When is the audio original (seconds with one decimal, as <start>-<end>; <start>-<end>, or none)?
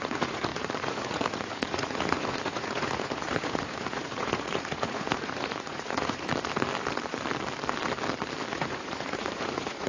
6.3-8.5